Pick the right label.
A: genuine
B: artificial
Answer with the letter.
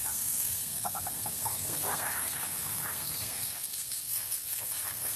B